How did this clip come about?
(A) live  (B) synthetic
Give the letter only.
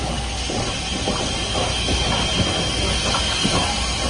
A